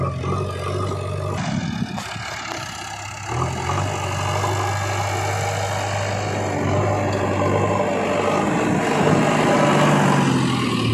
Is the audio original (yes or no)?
yes